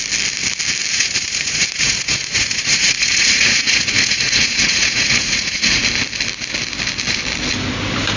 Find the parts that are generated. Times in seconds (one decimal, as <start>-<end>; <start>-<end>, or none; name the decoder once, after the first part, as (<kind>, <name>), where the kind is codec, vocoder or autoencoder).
0.9-5.8 (vocoder, Vocos)